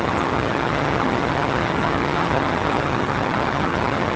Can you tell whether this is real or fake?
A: fake